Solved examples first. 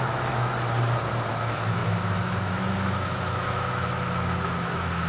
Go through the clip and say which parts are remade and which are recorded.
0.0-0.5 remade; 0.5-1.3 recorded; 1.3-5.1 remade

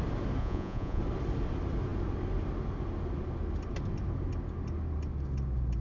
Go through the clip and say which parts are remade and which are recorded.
0.0-0.4 recorded; 0.4-1.0 remade; 1.0-5.8 recorded